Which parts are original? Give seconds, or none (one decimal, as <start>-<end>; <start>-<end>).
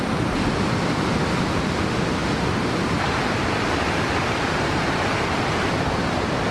0.0-6.5